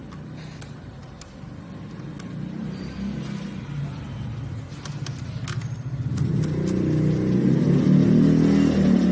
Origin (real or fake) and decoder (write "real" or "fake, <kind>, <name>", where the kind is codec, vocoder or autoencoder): real